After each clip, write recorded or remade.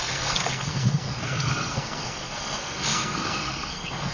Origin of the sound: remade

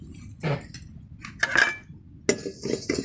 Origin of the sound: recorded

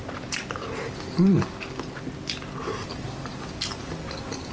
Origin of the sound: recorded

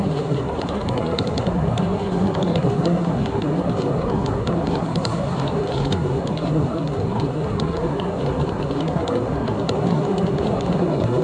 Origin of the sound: remade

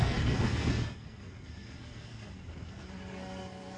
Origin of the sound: remade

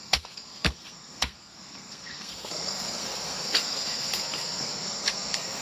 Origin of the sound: remade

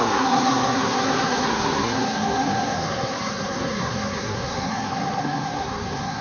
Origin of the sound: remade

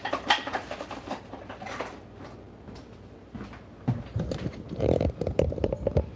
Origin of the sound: recorded